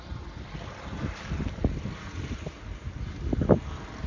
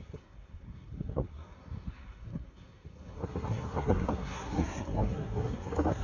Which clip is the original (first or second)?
first